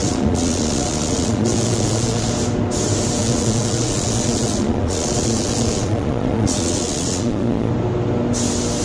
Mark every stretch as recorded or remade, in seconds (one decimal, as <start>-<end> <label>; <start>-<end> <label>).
0.0-2.3 remade; 2.3-3.2 recorded; 3.2-7.7 remade; 7.7-8.8 recorded